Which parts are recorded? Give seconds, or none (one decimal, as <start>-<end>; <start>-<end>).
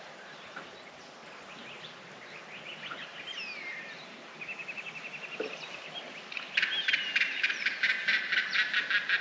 0.0-9.2